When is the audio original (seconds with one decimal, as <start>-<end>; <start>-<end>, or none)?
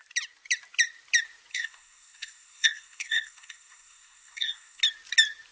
0.0-1.5; 4.8-5.5